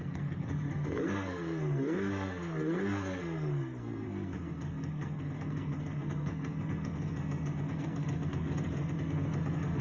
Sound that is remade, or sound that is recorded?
remade